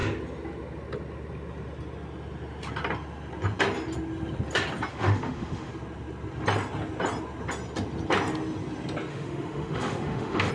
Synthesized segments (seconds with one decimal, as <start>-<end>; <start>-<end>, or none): 4.9-5.7; 9.1-10.5